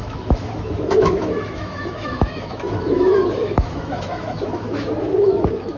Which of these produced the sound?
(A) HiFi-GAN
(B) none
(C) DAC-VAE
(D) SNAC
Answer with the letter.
C